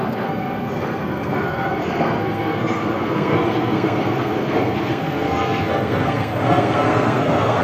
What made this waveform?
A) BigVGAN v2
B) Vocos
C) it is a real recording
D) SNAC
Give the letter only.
D